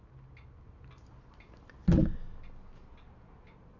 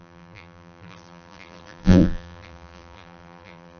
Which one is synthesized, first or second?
second